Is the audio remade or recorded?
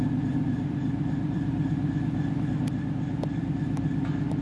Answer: remade